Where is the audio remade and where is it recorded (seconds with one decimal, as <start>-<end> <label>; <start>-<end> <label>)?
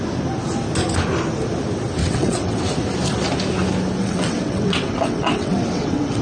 0.0-2.0 recorded; 2.0-2.6 remade; 2.6-4.0 recorded; 4.0-6.2 remade